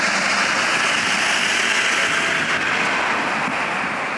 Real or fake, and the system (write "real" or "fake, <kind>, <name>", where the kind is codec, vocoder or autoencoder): real